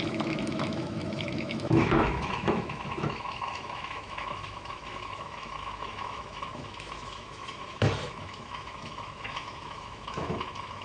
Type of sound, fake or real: fake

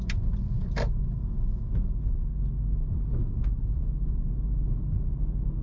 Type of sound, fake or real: real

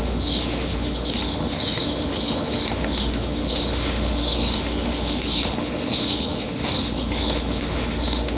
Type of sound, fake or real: fake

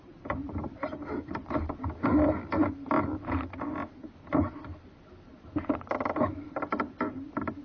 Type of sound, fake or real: real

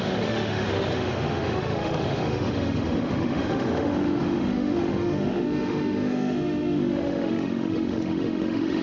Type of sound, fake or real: fake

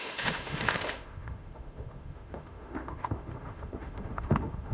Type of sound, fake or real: fake